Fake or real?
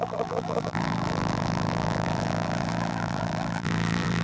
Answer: fake